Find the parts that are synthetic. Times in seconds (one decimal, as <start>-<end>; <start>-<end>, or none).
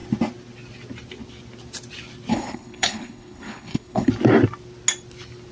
2.3-4.1